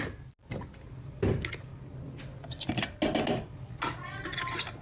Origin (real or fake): real